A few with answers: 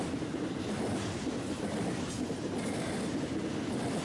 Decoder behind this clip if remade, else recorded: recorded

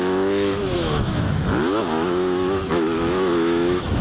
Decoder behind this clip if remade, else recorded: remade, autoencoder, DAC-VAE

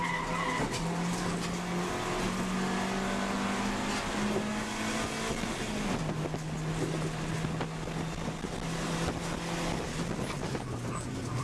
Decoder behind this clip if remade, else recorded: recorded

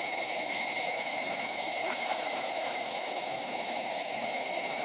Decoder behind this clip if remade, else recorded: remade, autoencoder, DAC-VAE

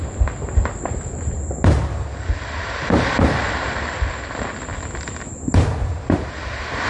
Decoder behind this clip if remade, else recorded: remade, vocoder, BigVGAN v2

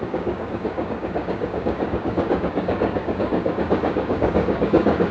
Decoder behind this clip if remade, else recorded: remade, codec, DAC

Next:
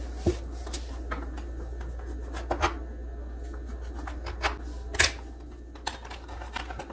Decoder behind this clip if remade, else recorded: recorded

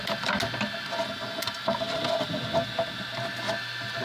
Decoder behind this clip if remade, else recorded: recorded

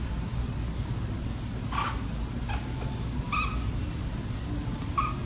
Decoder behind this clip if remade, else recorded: recorded